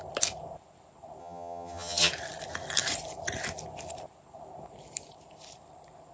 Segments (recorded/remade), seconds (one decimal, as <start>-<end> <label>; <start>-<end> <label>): 0.0-1.2 recorded; 1.2-2.1 remade; 2.1-6.1 recorded